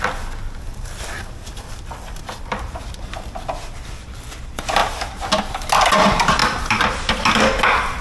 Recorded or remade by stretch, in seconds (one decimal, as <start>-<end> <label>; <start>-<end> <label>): 0.0-8.0 recorded